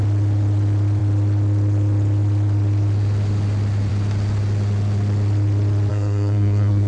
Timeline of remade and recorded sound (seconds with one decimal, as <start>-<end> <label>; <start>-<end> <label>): 0.0-5.9 recorded; 5.9-6.9 remade